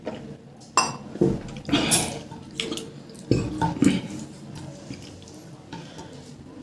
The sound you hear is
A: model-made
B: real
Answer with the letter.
B